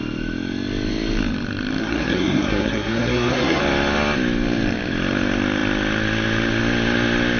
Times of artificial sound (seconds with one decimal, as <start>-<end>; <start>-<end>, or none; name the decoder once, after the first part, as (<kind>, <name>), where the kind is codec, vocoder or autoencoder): 1.8-3.6 (codec, SNAC)